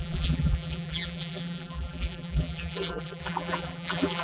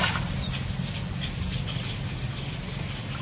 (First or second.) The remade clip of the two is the first